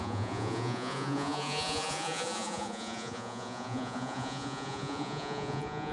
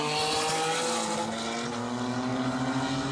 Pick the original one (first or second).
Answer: second